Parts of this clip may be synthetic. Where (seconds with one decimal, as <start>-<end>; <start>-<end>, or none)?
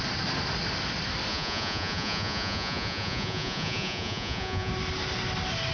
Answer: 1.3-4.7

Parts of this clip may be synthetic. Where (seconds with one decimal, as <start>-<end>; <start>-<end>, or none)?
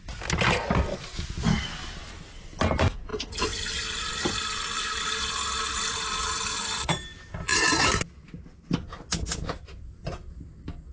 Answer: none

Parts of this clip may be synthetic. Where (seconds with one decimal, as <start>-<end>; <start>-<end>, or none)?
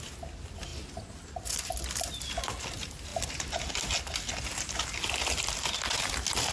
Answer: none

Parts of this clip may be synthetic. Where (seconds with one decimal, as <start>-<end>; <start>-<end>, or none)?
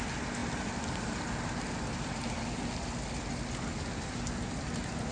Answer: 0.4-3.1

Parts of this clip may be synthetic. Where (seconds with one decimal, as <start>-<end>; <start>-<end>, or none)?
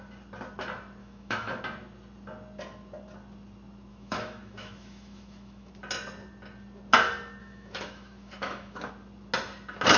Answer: 1.0-1.6; 3.9-5.7; 7.4-8.9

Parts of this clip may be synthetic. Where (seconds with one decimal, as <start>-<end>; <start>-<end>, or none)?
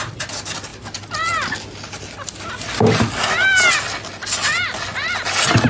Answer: none